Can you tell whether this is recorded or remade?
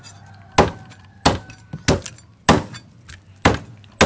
recorded